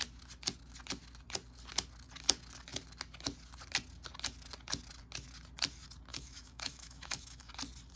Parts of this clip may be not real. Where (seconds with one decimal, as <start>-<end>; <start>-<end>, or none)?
6.1-7.5